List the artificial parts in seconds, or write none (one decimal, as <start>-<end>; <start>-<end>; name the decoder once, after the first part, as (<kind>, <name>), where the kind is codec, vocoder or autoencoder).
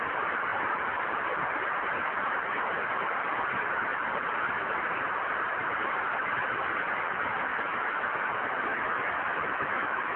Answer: 7.5-8.1 (autoencoder, DAC-VAE); 8.7-10.2